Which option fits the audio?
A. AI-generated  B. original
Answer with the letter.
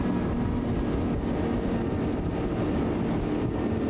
B